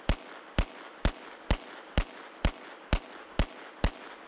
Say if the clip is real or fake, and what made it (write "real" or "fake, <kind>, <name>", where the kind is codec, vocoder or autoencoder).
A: real